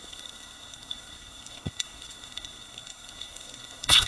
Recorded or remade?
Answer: remade